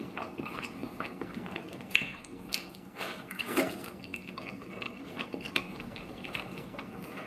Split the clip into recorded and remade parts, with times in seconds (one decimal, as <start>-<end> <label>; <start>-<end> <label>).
0.0-7.3 remade